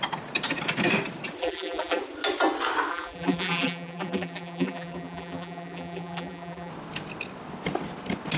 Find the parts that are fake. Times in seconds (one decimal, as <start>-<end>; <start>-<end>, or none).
1.4-2.0; 2.9-6.7